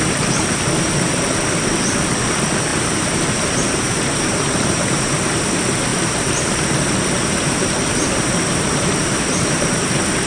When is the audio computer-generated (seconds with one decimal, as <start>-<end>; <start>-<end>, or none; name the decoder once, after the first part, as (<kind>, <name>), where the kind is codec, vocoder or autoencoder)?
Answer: 2.7-5.5 (vocoder, BigVGAN v2); 5.9-9.9